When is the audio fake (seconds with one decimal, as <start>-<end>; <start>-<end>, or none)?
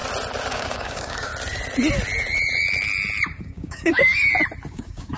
0.5-1.3; 3.4-4.1; 4.7-5.2